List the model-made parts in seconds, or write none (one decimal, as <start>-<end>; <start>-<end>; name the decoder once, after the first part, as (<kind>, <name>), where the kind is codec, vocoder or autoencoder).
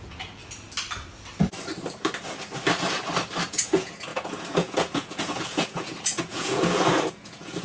0.0-0.4 (vocoder, Vocos); 3.4-7.6